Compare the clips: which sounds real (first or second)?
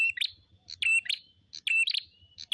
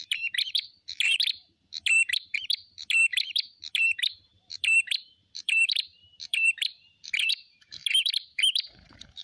first